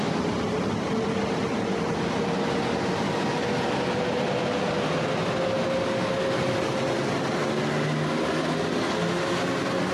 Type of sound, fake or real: real